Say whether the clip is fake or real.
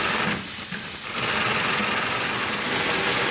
real